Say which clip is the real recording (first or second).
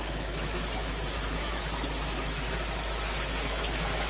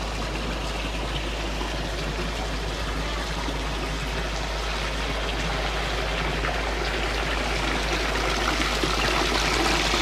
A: second